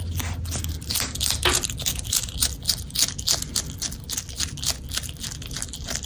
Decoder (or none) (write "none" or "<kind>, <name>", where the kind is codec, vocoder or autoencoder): none